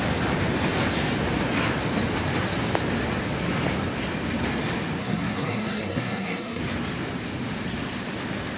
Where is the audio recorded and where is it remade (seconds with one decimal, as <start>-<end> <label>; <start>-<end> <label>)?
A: 0.0-5.0 recorded; 5.0-6.6 remade; 6.6-8.6 recorded